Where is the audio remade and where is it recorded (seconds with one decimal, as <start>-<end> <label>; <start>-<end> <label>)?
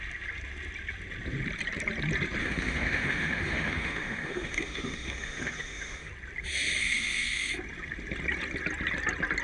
0.0-2.4 recorded; 2.4-6.1 remade; 6.1-6.8 recorded; 6.8-7.5 remade; 7.5-9.4 recorded